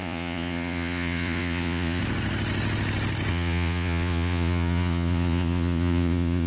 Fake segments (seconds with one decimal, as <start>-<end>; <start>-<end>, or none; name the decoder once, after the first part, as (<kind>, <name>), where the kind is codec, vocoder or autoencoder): 0.0-2.0 (vocoder, Vocos); 3.3-6.5